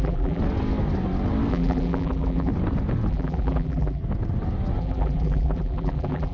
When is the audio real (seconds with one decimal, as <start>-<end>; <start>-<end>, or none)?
0.4-1.5; 2.5-3.1; 4.0-4.8